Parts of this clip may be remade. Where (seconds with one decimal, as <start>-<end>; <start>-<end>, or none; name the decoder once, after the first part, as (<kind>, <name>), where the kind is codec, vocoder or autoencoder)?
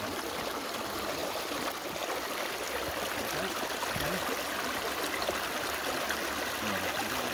none